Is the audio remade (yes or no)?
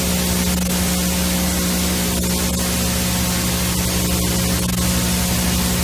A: no